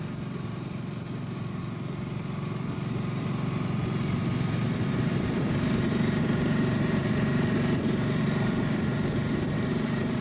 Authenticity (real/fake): fake